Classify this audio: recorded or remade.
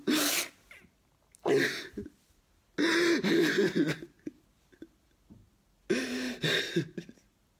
recorded